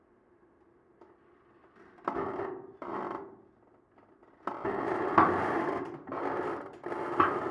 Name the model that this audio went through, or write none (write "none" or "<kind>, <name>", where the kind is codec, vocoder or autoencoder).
none